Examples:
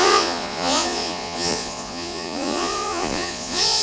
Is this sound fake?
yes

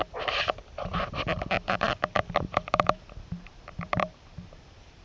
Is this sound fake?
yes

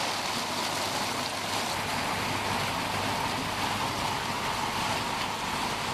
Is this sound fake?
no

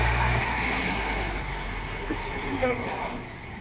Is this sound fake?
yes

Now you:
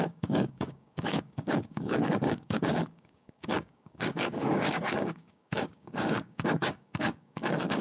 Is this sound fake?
yes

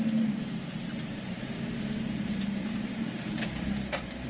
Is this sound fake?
yes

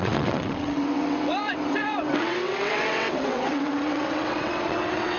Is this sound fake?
yes